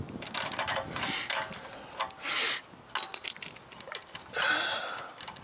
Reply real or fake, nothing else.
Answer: real